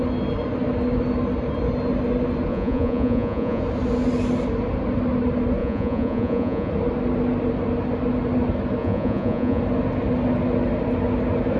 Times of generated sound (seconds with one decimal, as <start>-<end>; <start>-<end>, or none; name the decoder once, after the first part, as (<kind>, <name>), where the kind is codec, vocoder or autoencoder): 2.5-3.6 (vocoder, Vocos); 5.6-6.7; 8.8-9.6